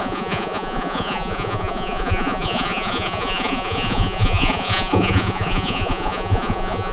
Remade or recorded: remade